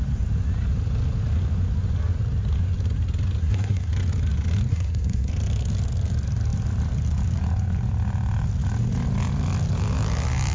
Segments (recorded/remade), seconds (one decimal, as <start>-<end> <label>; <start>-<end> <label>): 0.0-3.4 recorded; 3.4-3.9 remade; 3.9-4.7 recorded; 4.7-5.3 remade; 5.3-10.5 recorded